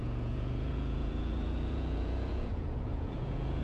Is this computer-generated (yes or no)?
yes